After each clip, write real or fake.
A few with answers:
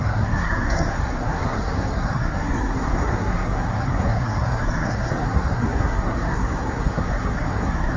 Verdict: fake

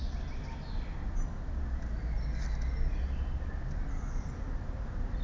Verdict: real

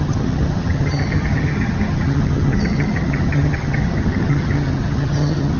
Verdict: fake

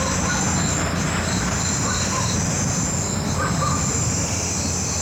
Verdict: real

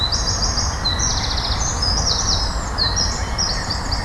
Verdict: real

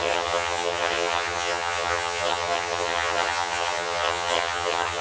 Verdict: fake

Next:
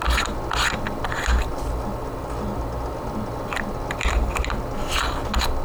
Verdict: real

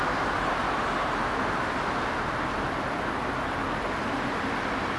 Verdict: real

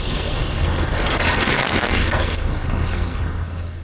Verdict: fake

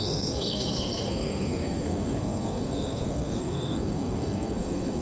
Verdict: fake